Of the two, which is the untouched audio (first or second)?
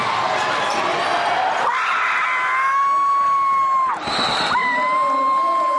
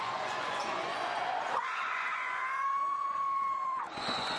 first